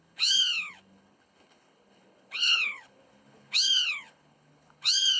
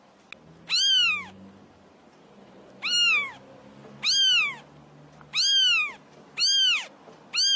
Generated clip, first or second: first